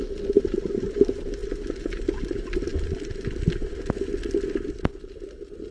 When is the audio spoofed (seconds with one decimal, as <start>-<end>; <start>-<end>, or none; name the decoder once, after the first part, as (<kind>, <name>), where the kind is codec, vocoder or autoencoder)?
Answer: none

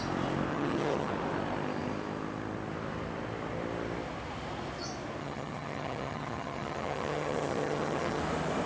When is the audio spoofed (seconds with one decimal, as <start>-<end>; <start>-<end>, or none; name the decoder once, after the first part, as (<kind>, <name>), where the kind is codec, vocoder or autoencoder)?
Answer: 0.5-1.1 (vocoder, HiFi-GAN); 5.2-8.2

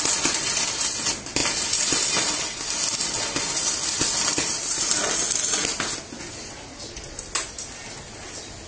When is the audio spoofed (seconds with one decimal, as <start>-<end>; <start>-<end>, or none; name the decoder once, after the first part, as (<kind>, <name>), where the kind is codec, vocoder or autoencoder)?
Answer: none

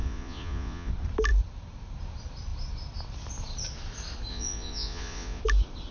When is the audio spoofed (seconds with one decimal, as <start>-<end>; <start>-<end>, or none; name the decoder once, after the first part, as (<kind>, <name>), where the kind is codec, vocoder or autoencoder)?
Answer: 0.0-0.9 (vocoder, Vocos); 4.3-5.4